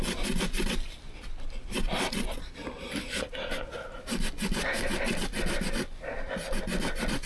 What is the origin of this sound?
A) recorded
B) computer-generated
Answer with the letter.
A